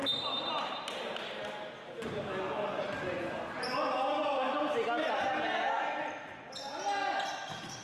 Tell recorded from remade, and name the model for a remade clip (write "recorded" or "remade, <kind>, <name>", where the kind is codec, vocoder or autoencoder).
recorded